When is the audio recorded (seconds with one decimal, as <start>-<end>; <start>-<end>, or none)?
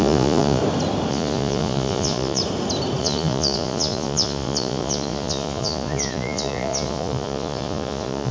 0.6-1.1; 2.4-3.0